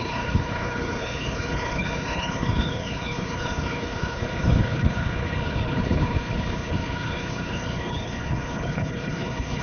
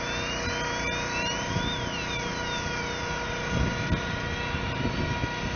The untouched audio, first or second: second